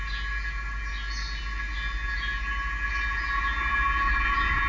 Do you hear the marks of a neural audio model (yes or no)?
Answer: no